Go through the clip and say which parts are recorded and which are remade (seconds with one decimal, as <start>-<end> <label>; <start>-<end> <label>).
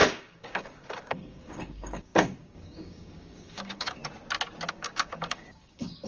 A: 0.0-4.0 remade; 4.0-4.7 recorded; 4.7-6.1 remade